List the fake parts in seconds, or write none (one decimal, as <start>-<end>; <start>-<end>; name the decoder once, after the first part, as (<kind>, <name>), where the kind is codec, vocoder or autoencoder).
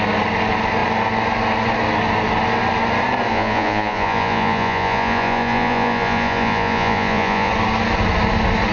3.3-7.5 (vocoder, Vocos)